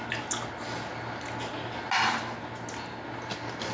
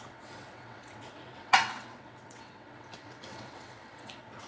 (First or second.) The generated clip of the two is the second